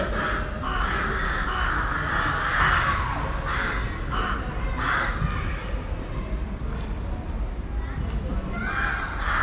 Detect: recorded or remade recorded